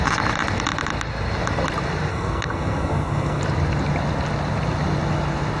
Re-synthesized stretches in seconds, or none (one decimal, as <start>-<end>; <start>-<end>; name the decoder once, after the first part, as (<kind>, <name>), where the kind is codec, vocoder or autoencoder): 2.1-3.4 (codec, SNAC)